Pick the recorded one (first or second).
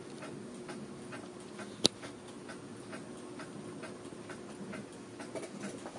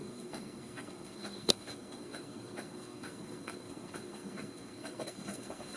first